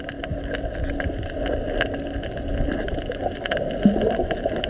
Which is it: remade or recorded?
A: recorded